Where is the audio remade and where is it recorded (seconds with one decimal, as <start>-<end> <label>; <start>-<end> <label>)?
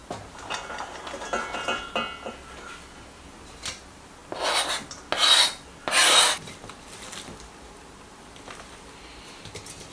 0.0-2.3 recorded; 2.3-4.2 remade; 4.2-7.4 recorded; 7.4-9.9 remade